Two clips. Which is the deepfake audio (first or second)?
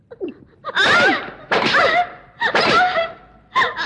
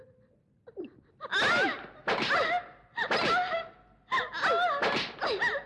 first